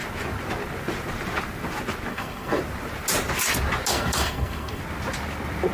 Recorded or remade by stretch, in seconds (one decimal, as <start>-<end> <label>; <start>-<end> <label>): 0.0-2.1 recorded; 2.1-2.6 remade; 2.6-3.9 recorded; 3.9-4.8 remade; 4.8-5.7 recorded